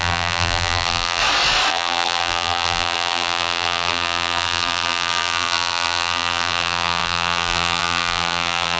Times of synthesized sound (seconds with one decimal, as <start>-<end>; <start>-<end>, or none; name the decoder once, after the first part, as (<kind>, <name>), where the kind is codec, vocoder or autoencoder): 0.0-1.2 (vocoder, BigVGAN v2); 1.7-8.8